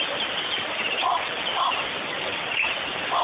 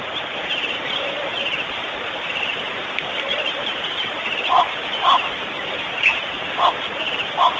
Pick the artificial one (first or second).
second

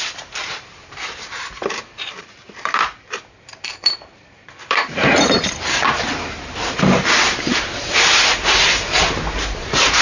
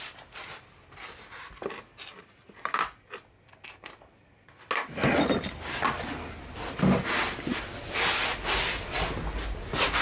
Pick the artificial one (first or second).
first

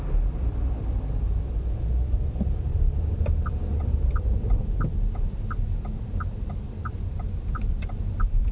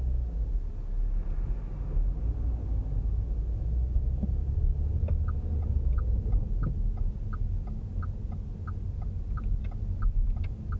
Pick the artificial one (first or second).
first